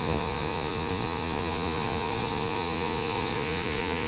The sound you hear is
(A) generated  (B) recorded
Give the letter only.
A